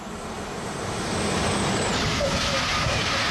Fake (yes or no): no